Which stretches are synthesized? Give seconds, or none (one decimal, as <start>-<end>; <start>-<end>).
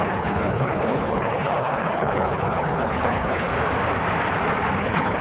0.0-3.5; 4.8-5.2